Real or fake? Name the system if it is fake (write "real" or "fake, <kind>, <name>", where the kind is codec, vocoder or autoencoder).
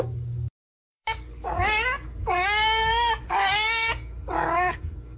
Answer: fake, codec, DAC